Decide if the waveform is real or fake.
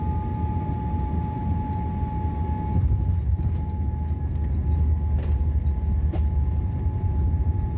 real